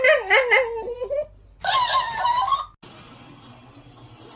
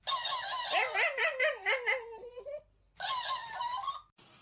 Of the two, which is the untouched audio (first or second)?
first